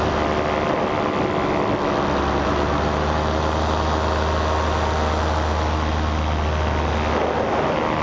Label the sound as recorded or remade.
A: recorded